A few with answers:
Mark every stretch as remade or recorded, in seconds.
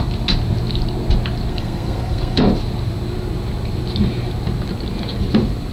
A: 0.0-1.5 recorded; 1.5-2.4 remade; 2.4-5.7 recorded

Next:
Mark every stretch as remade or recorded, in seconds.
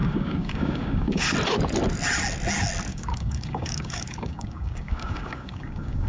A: 0.0-1.3 remade; 1.3-2.9 recorded; 2.9-6.1 remade